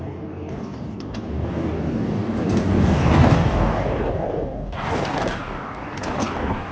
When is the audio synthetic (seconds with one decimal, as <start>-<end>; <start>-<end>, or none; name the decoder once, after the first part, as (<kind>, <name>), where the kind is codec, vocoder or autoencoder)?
0.0-6.7 (codec, DAC)